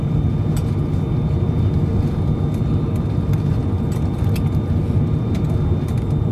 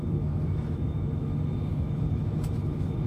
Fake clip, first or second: second